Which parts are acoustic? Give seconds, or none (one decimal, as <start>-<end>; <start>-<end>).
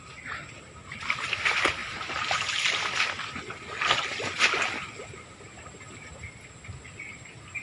0.0-7.6